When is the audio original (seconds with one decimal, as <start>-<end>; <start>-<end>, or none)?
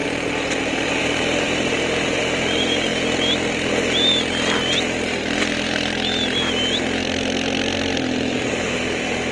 2.9-8.2